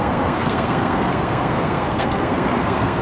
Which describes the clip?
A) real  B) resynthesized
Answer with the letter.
B